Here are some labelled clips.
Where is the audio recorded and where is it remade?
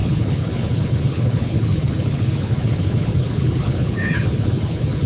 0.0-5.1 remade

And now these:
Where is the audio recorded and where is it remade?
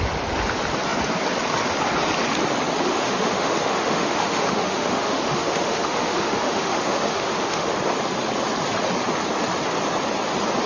0.0-2.9 recorded; 2.9-7.7 remade; 7.7-10.7 recorded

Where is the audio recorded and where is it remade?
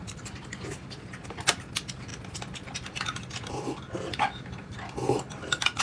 0.0-5.8 recorded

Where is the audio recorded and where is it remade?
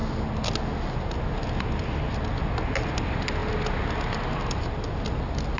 0.0-5.6 recorded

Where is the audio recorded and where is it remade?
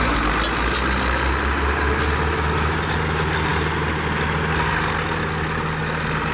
0.0-6.3 recorded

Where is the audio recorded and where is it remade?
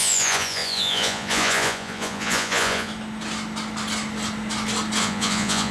0.0-2.9 remade; 2.9-5.0 recorded; 5.0-5.7 remade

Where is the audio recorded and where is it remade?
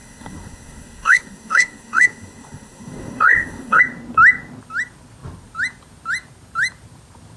0.0-3.8 remade; 3.8-7.4 recorded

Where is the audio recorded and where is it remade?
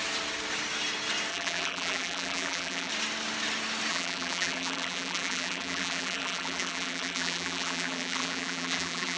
0.0-1.3 recorded; 1.3-2.9 remade; 2.9-3.9 recorded; 3.9-9.2 remade